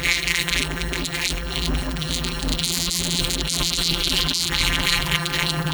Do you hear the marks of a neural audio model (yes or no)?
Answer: yes